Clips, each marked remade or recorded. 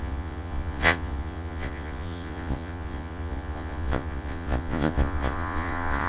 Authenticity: remade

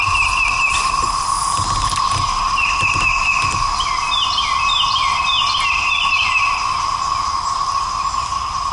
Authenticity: recorded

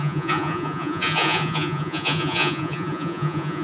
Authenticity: remade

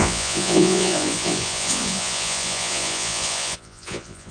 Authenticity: remade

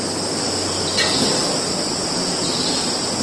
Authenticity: recorded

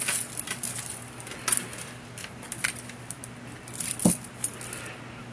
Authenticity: recorded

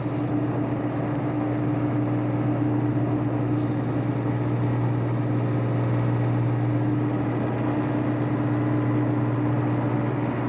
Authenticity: recorded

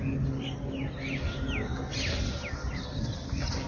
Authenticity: recorded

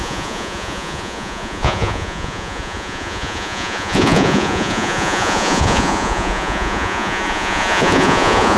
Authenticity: remade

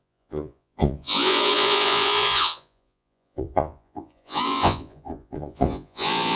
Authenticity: remade